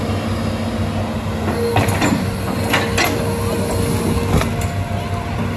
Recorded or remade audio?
recorded